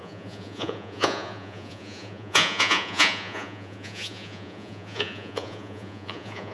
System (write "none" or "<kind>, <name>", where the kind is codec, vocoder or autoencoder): vocoder, Vocos